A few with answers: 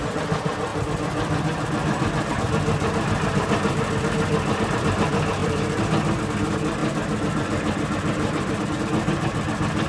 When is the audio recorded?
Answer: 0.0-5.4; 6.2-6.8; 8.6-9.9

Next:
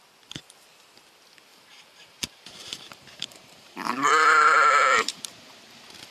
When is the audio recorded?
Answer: 0.0-1.5; 5.2-6.1

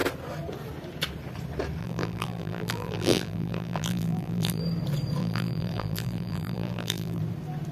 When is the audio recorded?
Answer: 0.0-1.8; 4.6-5.2; 7.2-7.7

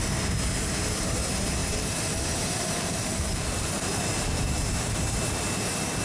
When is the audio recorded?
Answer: 0.0-1.6; 5.2-6.0

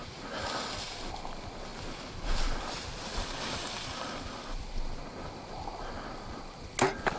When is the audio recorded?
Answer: 0.5-1.7; 4.7-7.2

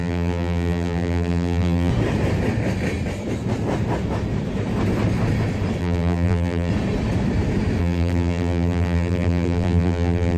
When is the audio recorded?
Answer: 1.9-5.8; 6.7-7.8